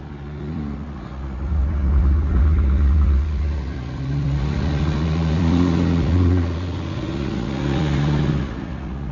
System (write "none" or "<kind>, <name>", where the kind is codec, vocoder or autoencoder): vocoder, Vocos